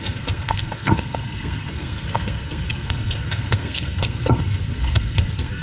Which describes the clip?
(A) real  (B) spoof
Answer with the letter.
B